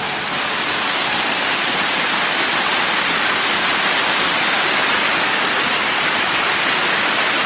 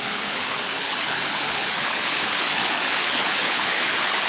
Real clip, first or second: first